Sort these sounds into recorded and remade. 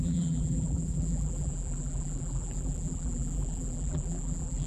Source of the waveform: remade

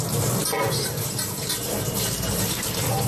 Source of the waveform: remade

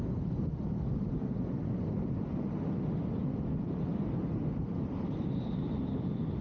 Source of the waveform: recorded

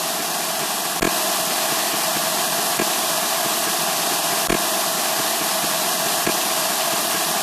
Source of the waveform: remade